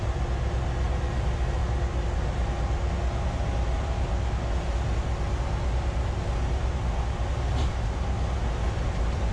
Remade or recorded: recorded